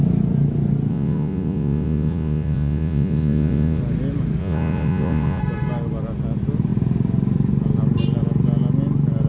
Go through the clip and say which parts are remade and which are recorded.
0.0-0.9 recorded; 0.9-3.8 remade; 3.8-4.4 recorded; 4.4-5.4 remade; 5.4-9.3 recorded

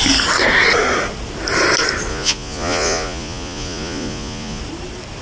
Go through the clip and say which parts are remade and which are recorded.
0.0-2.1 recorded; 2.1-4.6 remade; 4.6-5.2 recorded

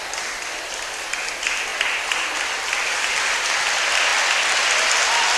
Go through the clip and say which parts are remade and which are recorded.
0.0-5.4 recorded

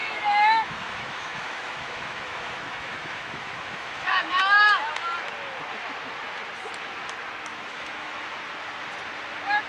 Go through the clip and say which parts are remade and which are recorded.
0.0-4.9 remade; 4.9-7.5 recorded; 7.5-8.3 remade; 8.3-9.7 recorded